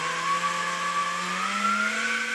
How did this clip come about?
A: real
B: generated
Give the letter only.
A